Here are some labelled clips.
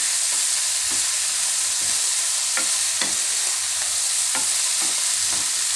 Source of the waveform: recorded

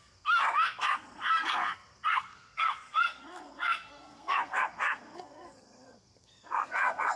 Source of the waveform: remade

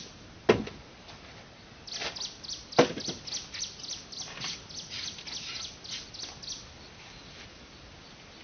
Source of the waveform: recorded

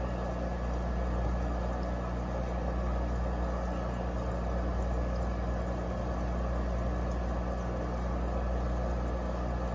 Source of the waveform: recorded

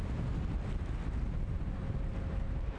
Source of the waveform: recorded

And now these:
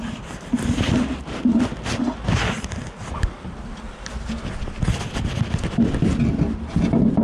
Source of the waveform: recorded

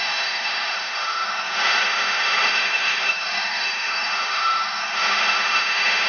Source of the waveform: remade